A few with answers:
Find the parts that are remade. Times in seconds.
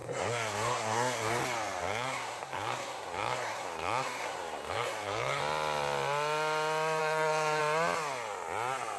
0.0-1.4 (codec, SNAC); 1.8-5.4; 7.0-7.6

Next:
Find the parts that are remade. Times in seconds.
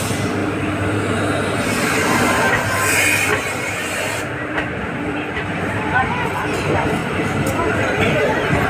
0.4-1.0 (vocoder, BigVGAN v2); 3.3-6.0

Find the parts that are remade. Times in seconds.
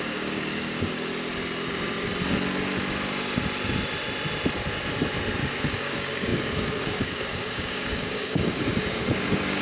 0.0-1.1 (codec, DAC); 5.6-9.6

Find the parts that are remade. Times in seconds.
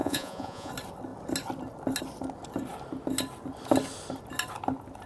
0.0-0.7 (vocoder, Vocos)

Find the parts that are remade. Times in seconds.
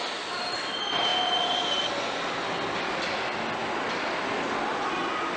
none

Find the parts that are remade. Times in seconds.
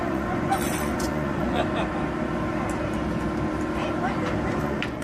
0.0-1.6 (vocoder, Vocos); 4.6-5.0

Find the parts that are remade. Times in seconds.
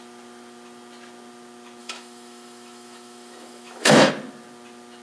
1.8-4.1 (autoencoder, DAC-VAE)